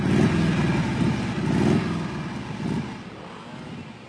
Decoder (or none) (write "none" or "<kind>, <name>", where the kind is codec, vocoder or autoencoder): none